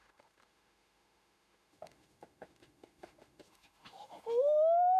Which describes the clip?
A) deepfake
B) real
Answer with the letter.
A